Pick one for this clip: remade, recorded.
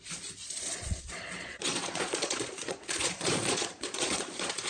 remade